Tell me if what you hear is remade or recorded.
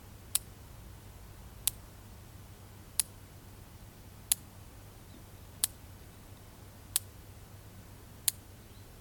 recorded